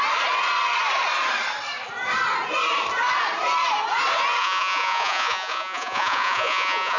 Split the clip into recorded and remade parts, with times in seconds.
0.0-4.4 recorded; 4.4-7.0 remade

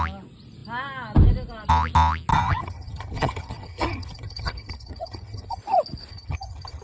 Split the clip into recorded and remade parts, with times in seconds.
0.0-2.3 recorded; 2.3-5.6 remade; 5.6-6.1 recorded; 6.1-6.8 remade

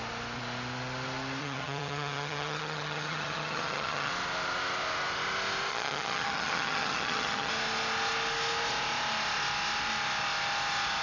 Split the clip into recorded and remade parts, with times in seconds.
0.0-1.4 recorded; 1.4-4.1 remade; 4.1-5.7 recorded; 5.7-7.5 remade; 7.5-11.0 recorded